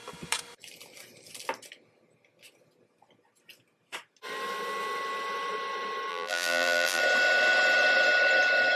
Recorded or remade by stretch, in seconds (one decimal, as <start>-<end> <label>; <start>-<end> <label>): 0.0-6.1 recorded; 6.1-7.0 remade; 7.0-8.8 recorded